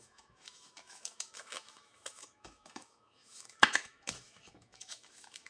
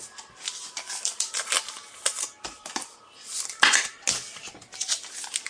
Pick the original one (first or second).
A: second